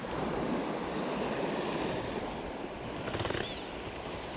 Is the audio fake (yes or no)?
no